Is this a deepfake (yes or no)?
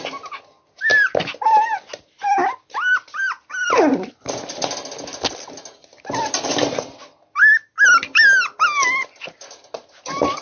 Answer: no